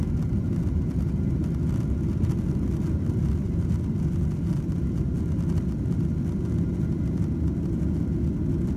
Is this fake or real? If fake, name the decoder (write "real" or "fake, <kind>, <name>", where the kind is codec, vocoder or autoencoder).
real